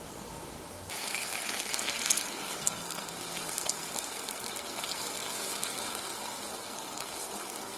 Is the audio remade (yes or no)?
yes